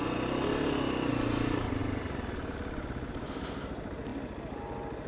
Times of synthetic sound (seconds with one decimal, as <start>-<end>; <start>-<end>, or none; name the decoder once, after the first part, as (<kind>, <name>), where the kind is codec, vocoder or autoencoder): none